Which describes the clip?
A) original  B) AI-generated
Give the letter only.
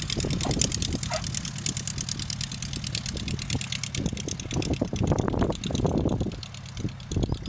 A